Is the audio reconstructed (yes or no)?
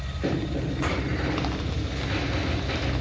no